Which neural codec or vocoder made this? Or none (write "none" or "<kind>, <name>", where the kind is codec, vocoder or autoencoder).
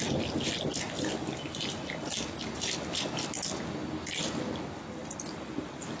none